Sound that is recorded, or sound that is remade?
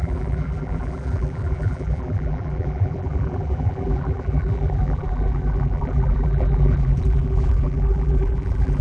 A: remade